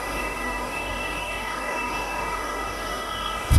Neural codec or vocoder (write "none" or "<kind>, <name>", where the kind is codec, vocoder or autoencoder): codec, DAC